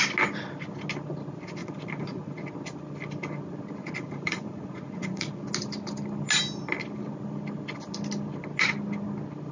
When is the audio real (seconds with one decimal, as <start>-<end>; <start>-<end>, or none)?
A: 0.0-1.6; 2.5-3.8; 5.4-9.5